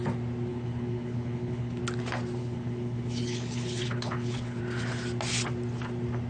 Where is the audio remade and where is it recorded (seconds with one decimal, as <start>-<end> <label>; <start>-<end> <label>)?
0.0-0.5 recorded; 0.5-1.8 remade; 1.8-2.4 recorded; 2.4-4.6 remade; 4.6-6.3 recorded